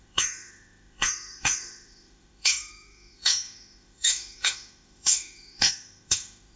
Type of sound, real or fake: fake